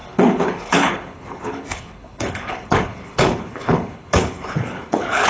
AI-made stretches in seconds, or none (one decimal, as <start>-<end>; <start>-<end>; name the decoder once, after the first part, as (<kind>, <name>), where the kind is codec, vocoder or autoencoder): 0.0-5.3 (codec, HILCodec)

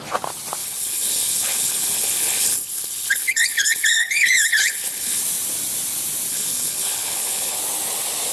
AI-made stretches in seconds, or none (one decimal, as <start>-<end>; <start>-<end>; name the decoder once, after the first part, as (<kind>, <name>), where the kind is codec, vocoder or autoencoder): 0.6-5.2 (codec, HILCodec); 6.3-7.6